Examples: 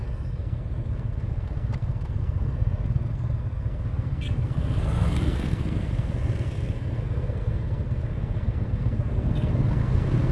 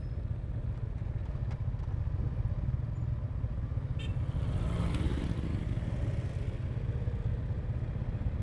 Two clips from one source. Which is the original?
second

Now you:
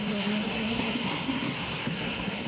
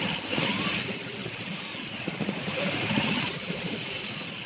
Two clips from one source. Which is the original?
second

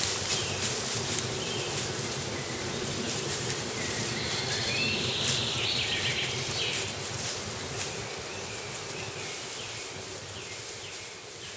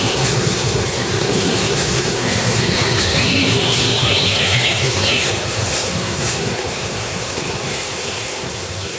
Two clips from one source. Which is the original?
first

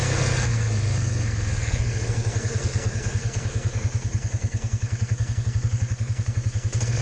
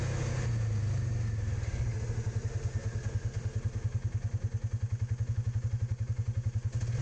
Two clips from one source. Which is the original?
second